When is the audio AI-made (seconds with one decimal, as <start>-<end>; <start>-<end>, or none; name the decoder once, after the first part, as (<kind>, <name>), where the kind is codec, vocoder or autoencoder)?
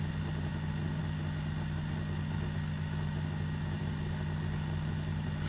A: none